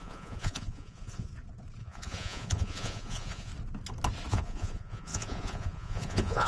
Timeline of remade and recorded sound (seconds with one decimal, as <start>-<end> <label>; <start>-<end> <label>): 0.0-1.3 remade; 1.3-1.8 recorded; 1.8-3.5 remade; 3.5-4.3 recorded; 4.3-6.5 remade